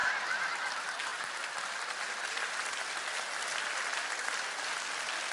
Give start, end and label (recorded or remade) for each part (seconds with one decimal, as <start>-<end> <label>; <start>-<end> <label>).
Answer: 0.0-5.3 recorded

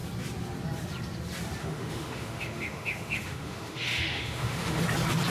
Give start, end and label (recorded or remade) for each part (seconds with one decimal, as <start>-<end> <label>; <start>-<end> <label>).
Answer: 0.0-1.6 recorded; 1.6-4.8 remade; 4.8-5.3 recorded

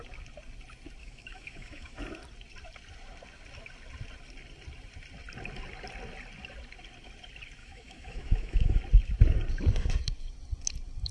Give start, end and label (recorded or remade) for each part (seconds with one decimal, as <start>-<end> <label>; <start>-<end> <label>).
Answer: 0.0-1.0 recorded; 1.0-2.0 remade; 2.0-7.6 recorded; 7.6-8.8 remade; 8.8-11.1 recorded

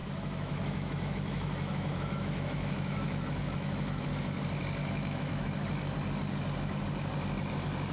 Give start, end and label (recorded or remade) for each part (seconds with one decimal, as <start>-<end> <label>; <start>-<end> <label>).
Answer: 0.0-4.1 remade; 4.1-4.8 recorded; 4.8-5.5 remade; 5.5-7.9 recorded